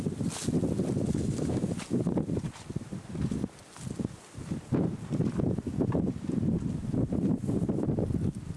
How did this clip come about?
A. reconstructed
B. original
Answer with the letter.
B